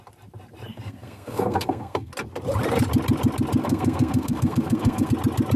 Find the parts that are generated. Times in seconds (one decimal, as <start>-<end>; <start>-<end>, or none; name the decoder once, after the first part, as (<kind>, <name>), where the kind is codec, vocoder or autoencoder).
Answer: 0.7-2.1 (codec, SNAC); 3.6-5.1